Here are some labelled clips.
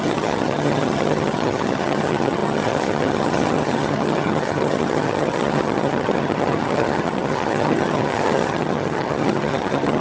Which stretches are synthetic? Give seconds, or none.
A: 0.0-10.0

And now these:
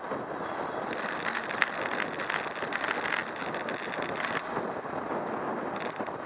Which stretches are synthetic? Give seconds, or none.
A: none

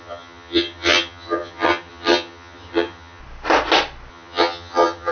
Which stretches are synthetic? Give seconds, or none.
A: 0.0-3.2; 4.1-5.1